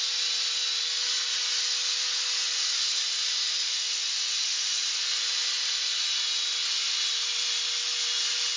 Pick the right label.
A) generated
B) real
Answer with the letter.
B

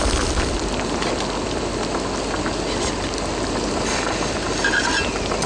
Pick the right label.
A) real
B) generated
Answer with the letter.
A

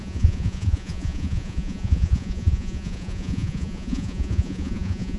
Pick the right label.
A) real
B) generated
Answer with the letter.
B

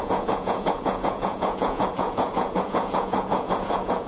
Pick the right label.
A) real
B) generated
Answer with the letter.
B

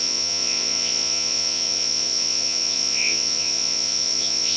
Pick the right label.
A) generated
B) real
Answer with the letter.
A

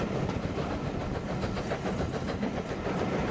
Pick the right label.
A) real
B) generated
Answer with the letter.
A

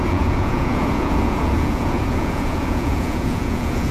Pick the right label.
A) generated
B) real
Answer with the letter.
A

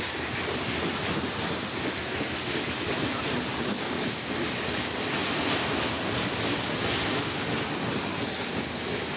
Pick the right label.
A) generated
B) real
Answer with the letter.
B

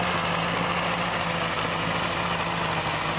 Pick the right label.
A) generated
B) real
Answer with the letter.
B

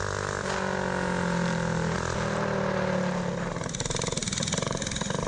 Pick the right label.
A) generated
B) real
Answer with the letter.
B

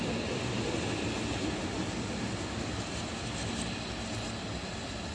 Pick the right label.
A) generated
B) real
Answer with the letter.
B